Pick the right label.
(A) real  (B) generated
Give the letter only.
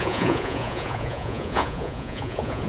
B